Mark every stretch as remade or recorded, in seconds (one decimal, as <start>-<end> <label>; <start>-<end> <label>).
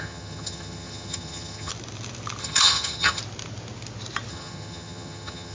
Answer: 0.0-1.7 remade; 1.7-2.4 recorded; 2.4-3.2 remade; 3.2-4.3 recorded; 4.3-5.5 remade